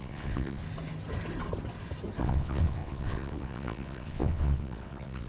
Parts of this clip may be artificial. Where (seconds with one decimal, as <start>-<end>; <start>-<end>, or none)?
0.0-0.6; 2.2-5.3